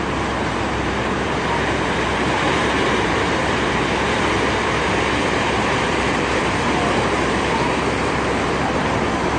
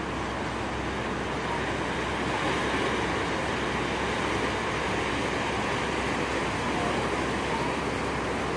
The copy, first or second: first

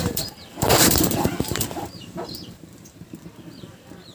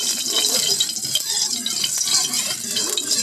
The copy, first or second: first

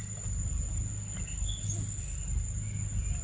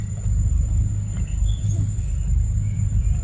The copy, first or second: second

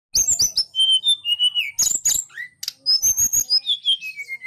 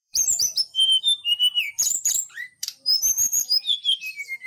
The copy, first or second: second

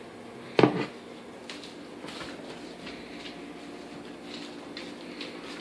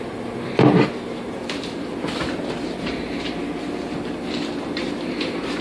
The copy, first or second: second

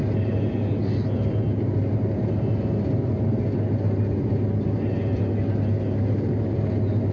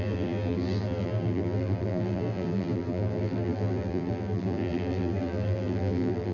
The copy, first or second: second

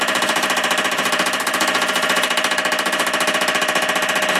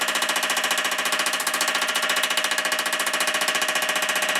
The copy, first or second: first